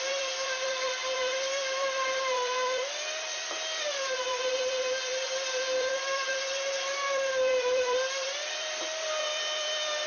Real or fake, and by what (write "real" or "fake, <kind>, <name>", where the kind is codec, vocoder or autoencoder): fake, vocoder, BigVGAN v2